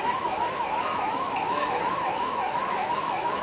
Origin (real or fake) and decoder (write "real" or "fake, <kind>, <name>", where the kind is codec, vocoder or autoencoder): fake, autoencoder, DAC-VAE